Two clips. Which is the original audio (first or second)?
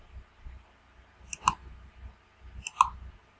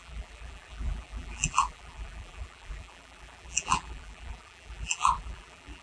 first